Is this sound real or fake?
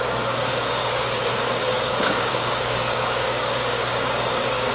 fake